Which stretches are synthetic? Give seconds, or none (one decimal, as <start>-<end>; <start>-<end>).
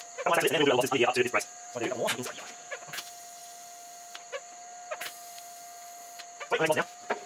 1.7-3.0